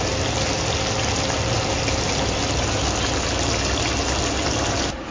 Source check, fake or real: real